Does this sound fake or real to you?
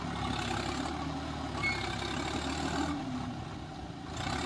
real